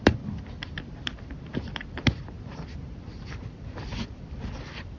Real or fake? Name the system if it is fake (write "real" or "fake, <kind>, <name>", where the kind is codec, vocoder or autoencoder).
fake, vocoder, BigVGAN v2